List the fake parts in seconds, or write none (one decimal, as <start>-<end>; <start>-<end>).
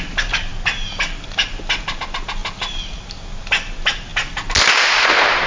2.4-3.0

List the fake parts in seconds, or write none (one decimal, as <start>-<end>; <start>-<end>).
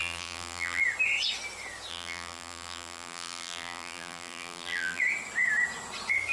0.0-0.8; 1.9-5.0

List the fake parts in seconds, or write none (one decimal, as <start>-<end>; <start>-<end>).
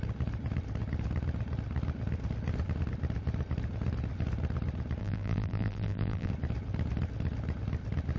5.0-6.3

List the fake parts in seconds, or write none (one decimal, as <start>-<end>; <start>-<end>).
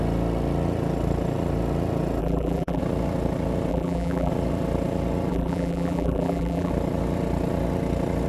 2.2-2.8; 3.7-4.3; 5.3-6.7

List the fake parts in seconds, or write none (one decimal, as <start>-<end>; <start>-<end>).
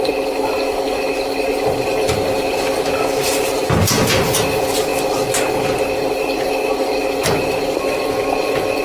none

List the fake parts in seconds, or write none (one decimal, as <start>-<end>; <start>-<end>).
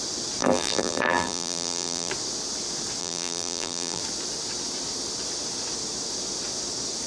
0.4-2.1; 3.0-4.0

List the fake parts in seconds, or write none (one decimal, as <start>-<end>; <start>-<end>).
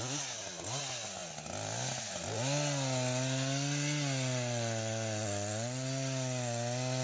none